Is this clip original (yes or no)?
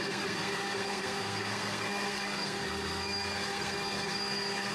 no